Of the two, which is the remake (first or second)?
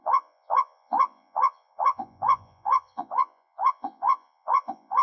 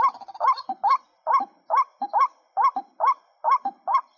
first